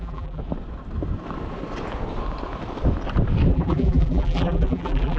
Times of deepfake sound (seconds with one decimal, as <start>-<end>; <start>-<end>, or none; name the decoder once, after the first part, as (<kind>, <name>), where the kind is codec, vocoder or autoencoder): 0.0-0.4 (vocoder, BigVGAN v2); 3.5-5.2